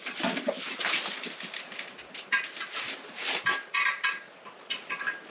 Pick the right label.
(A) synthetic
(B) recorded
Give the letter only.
B